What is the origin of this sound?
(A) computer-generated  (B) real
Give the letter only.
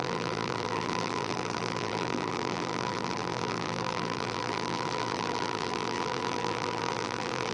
A